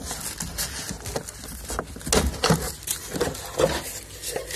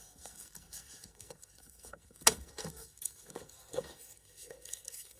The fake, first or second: second